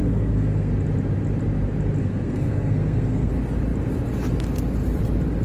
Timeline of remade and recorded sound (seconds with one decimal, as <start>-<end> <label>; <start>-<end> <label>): 0.0-0.7 remade; 0.7-2.0 recorded; 2.0-3.3 remade; 3.3-5.4 recorded